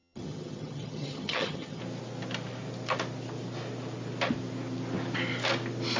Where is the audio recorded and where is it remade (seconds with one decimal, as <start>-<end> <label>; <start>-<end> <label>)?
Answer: 0.0-1.8 remade; 1.8-6.0 recorded